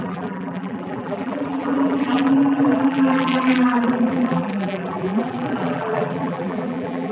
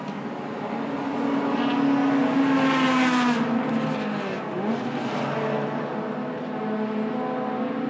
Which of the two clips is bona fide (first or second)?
second